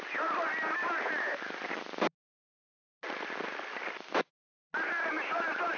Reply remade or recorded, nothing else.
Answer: recorded